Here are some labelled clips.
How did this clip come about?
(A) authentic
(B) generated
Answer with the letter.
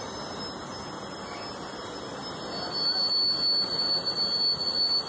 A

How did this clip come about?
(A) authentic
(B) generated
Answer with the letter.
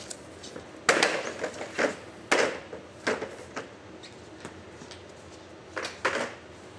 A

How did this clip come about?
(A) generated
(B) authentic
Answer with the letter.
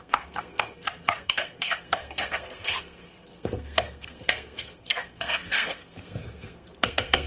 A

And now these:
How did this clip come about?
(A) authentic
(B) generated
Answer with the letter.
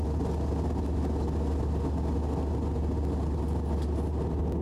A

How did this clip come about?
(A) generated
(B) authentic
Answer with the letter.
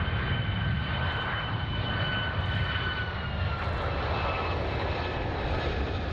B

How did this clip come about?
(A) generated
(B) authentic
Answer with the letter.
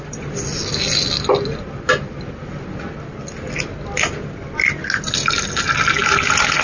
B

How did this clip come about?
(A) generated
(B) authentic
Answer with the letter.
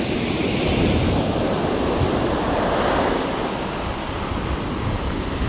B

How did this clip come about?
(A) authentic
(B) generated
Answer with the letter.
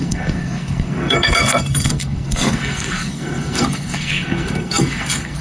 B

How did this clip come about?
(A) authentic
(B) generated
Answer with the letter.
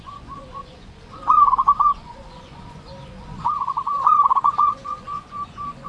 B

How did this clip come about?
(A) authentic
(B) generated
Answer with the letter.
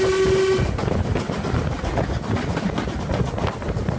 A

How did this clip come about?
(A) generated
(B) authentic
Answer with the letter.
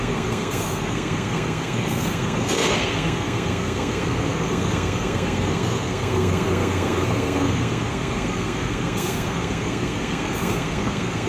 A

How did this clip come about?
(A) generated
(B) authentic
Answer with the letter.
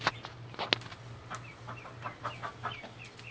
B